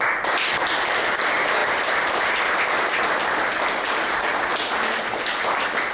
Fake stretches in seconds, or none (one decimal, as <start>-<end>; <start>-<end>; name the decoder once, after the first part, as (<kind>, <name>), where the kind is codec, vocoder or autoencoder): 1.6-2.4 (vocoder, BigVGAN v2); 3.5-4.2